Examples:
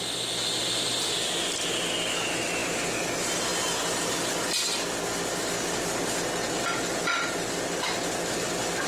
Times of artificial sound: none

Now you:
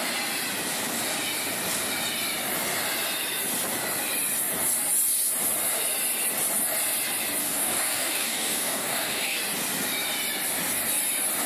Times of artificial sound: 7.4-9.4

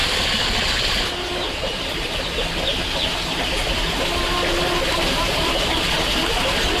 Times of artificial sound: none

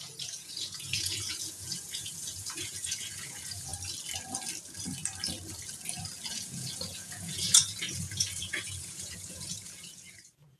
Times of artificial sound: 0.0-3.7; 6.3-10.6

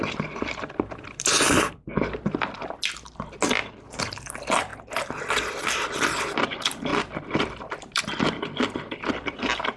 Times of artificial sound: 0.0-1.9; 4.0-4.7; 5.5-9.8

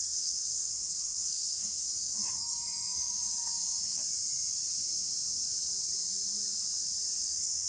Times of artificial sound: 0.0-4.0; 7.3-7.7

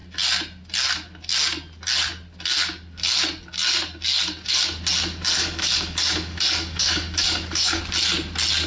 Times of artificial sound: 5.4-7.8